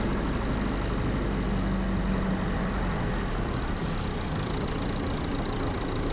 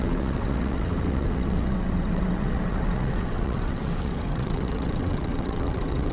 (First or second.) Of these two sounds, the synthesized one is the second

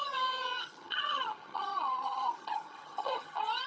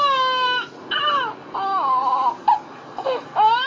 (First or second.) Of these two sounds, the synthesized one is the first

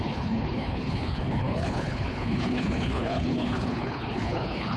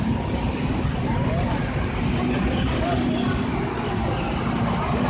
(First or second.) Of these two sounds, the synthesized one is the first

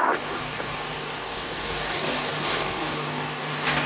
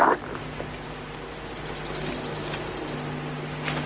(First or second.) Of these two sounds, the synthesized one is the first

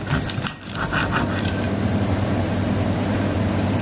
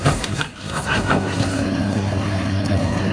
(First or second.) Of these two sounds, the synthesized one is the second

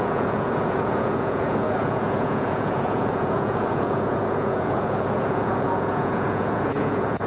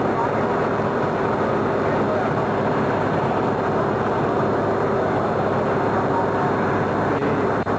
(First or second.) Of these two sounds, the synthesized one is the first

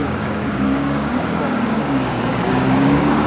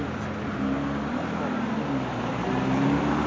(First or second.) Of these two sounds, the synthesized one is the first